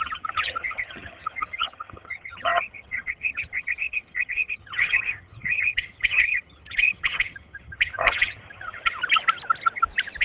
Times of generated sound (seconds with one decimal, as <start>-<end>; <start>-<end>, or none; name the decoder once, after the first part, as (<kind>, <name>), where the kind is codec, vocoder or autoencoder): 0.0-9.0 (vocoder, HiFi-GAN)